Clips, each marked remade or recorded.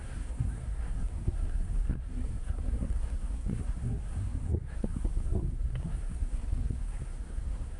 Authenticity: remade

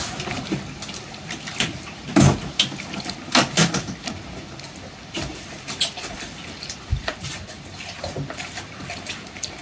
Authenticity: recorded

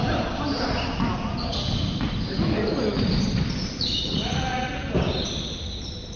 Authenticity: recorded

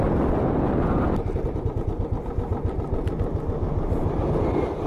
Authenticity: recorded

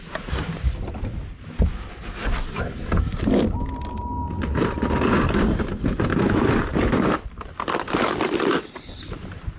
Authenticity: recorded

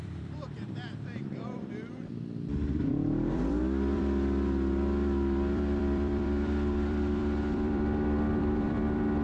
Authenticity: remade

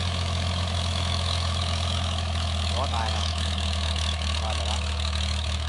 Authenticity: remade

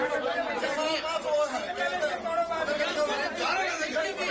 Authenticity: recorded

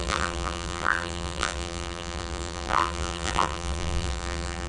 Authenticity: remade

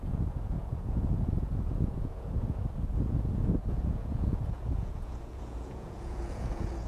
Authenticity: remade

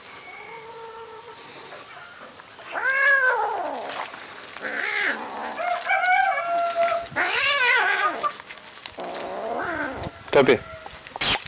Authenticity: recorded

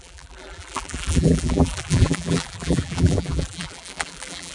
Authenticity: remade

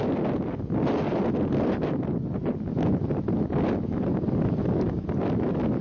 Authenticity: recorded